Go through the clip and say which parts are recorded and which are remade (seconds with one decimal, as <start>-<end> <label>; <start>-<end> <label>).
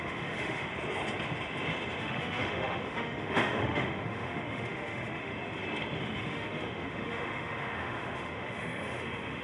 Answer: 0.0-0.7 remade; 0.7-2.0 recorded; 2.0-5.3 remade; 5.3-6.0 recorded; 6.0-9.4 remade